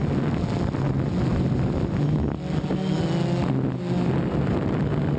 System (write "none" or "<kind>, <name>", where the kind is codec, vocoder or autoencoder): none